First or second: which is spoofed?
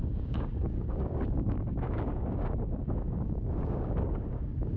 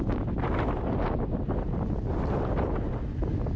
first